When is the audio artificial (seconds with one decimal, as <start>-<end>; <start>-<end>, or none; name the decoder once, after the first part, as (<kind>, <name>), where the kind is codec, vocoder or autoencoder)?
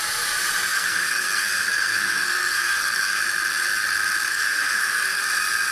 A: 0.7-3.2 (codec, SNAC); 4.3-5.2